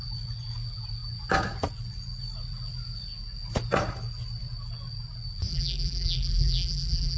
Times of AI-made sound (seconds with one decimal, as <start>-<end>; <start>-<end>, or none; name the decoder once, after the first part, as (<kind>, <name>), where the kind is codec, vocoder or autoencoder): 5.5-7.2 (vocoder, BigVGAN v2)